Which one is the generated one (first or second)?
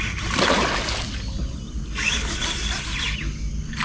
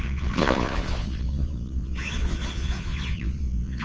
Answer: second